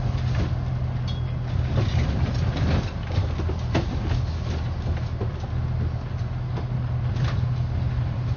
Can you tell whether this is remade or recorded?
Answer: recorded